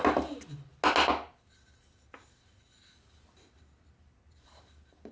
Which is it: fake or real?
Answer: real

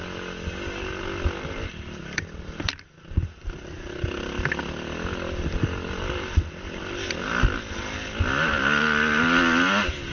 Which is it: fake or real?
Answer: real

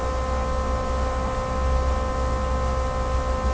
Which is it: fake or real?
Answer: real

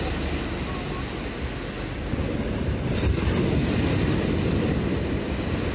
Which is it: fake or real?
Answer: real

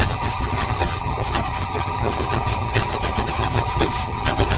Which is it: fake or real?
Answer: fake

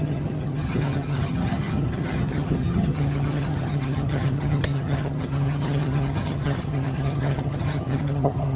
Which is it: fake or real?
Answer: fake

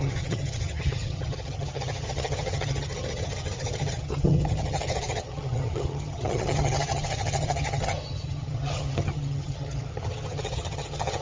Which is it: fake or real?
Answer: fake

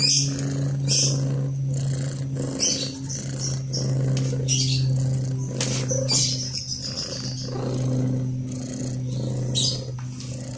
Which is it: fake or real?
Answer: real